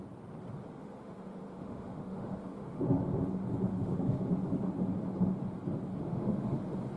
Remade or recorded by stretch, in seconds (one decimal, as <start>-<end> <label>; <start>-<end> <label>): 0.0-0.8 recorded; 0.8-2.8 remade; 2.8-3.7 recorded; 3.7-4.2 remade; 4.2-6.1 recorded; 6.1-6.6 remade; 6.6-7.0 recorded